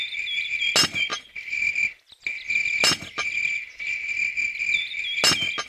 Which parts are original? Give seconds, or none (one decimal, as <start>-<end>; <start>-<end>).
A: 0.0-1.1; 1.7-5.7